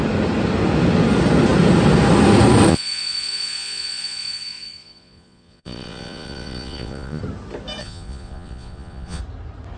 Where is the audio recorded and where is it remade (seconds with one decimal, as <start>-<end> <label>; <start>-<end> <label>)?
0.0-2.7 recorded; 2.7-7.2 remade; 7.2-7.8 recorded; 7.8-9.2 remade; 9.2-9.8 recorded